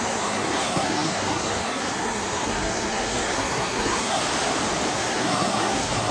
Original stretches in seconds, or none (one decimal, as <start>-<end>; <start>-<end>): 4.2-4.9